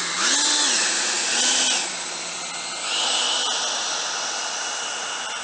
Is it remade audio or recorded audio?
recorded